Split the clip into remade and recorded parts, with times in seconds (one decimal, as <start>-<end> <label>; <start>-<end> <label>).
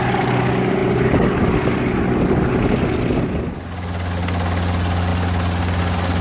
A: 0.0-6.2 recorded